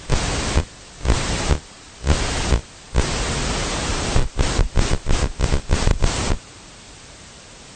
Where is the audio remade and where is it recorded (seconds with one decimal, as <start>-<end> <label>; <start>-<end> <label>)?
0.0-3.6 recorded; 3.6-7.8 remade